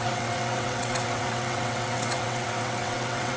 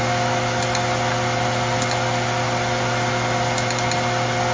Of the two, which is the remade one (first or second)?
first